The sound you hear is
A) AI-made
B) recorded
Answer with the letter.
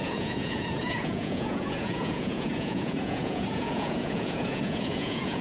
A